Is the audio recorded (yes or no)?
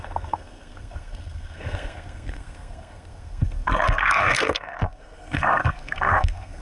no